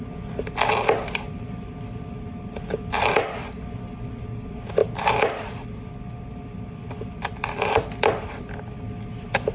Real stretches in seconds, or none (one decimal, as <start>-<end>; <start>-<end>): 0.0-9.5